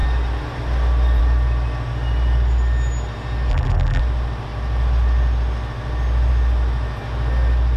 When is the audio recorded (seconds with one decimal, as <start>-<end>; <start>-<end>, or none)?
0.0-3.5; 4.0-7.8